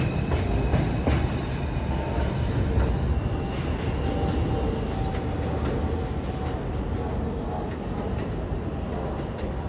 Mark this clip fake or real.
real